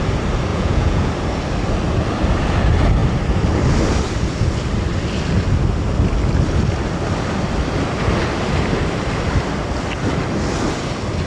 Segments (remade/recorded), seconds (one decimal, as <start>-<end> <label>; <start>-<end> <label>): 0.0-0.5 recorded; 0.5-1.1 remade; 1.1-11.3 recorded